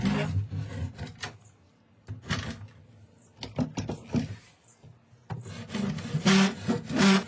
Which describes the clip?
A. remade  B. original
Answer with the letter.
B